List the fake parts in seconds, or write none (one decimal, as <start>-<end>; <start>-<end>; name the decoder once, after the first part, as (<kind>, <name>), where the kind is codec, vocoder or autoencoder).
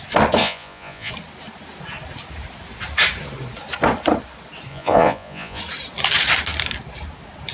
0.4-1.1 (vocoder, Vocos); 4.7-5.6